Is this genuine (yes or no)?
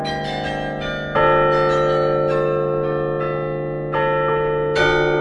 yes